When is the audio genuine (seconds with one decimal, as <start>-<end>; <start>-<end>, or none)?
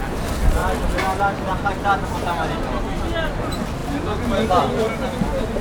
0.0-5.6